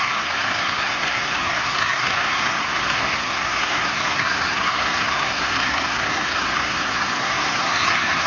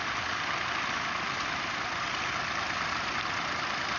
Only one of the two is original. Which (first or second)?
second